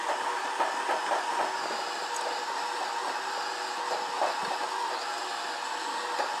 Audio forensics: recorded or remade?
recorded